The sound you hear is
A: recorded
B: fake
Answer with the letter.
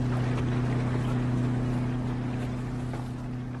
A